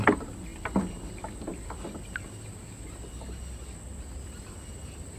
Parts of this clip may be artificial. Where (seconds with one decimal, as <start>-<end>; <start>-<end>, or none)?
none